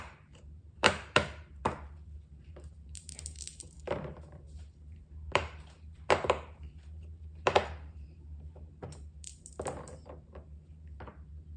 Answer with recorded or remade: remade